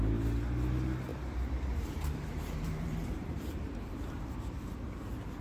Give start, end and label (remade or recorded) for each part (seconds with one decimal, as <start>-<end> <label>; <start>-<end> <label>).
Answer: 0.0-1.1 recorded; 1.1-4.3 remade; 4.3-5.4 recorded

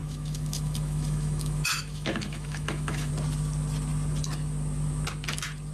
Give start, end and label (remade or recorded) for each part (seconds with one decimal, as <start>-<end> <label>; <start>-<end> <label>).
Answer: 0.0-3.1 remade; 3.1-5.7 recorded

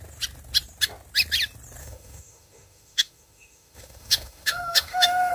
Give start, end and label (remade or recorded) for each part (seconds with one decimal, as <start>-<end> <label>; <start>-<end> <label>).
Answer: 0.0-1.8 recorded; 1.8-5.3 remade

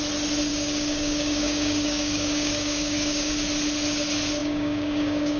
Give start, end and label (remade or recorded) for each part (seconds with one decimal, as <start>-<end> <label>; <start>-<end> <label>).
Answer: 0.0-0.5 recorded; 0.5-3.3 remade; 3.3-4.4 recorded; 4.4-5.4 remade

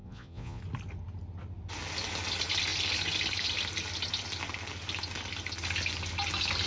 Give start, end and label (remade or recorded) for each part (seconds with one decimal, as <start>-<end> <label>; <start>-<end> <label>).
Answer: 0.0-0.6 remade; 0.6-6.7 recorded